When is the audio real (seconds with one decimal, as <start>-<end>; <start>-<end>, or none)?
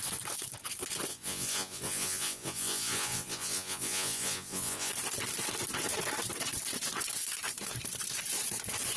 0.0-1.1; 4.9-9.0